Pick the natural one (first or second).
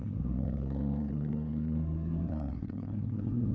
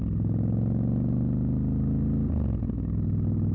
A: second